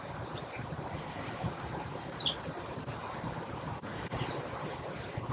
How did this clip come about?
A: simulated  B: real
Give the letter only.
A